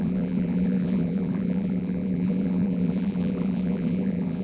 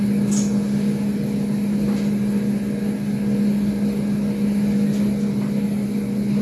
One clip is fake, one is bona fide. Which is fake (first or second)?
first